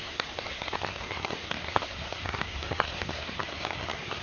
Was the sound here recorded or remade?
remade